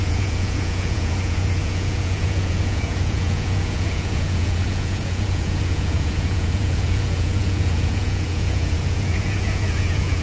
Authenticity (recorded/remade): remade